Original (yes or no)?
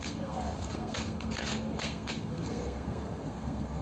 no